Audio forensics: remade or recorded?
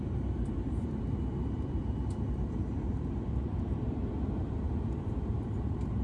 remade